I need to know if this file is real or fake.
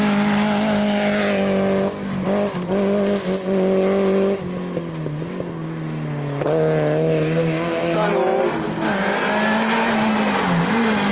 real